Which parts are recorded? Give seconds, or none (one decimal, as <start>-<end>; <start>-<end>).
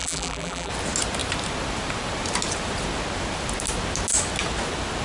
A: 0.7-5.0